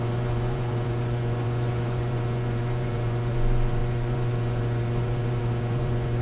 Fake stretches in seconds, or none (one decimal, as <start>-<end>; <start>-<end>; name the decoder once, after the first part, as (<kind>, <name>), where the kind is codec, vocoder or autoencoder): 0.0-6.2 (vocoder, Vocos)